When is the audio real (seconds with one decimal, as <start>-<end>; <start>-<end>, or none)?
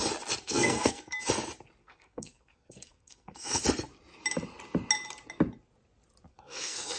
0.0-0.4; 1.2-1.8; 3.6-6.3